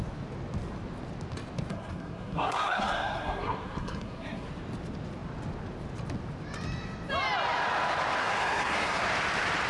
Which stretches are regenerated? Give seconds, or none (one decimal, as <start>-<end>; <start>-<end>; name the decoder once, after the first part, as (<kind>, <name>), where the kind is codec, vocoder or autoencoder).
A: 1.7-4.5 (codec, SNAC); 8.2-9.0